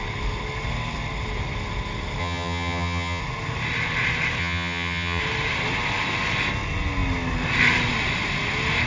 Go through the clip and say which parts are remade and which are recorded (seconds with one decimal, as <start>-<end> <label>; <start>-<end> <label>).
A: 0.0-2.2 recorded; 2.2-3.2 remade; 3.2-4.4 recorded; 4.4-5.2 remade; 5.2-8.9 recorded